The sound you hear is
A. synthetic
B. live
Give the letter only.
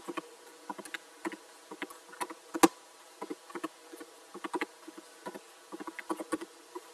B